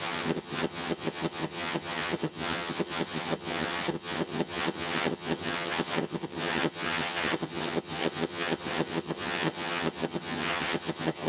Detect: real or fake fake